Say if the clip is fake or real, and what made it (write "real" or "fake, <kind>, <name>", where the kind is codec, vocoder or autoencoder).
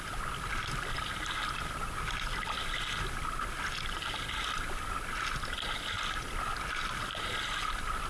real